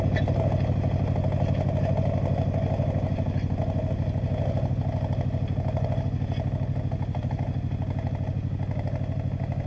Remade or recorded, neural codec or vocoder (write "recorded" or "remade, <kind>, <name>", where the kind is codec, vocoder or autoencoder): recorded